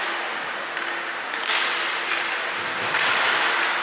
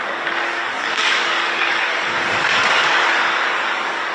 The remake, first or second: second